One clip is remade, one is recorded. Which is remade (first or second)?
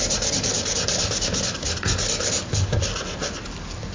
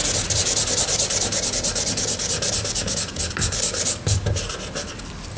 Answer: first